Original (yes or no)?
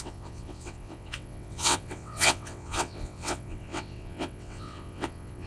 no